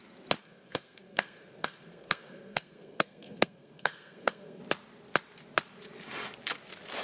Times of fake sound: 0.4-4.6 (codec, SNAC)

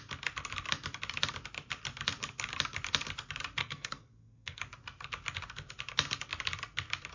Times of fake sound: 3.6-4.6 (codec, SNAC)

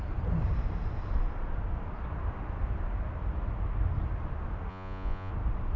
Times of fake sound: 4.7-5.3 (vocoder, Vocos)